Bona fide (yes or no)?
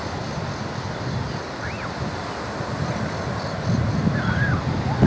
yes